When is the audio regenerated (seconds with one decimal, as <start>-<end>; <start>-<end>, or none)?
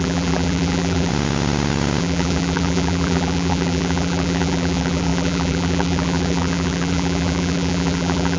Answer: 0.0-1.1; 2.0-8.4